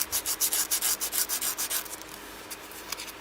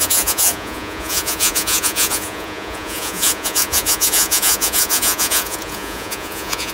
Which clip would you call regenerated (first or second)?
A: second